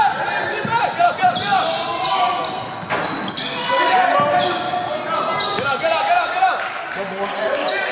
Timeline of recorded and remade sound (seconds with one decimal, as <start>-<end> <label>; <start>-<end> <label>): 0.0-7.9 recorded